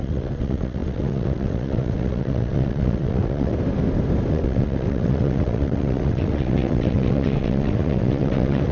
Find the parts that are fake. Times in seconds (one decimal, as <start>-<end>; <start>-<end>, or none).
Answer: 0.0-3.5; 4.3-8.7